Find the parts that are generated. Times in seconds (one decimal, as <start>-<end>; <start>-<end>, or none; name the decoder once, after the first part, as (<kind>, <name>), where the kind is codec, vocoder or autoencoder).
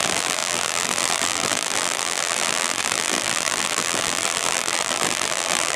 0.0-5.8 (vocoder, BigVGAN v2)